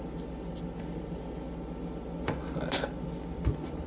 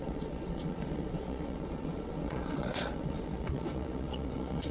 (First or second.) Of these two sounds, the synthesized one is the second